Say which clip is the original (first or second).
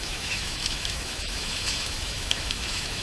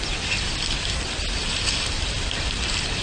second